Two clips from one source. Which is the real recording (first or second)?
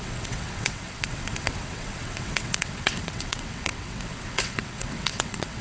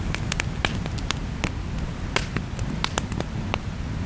second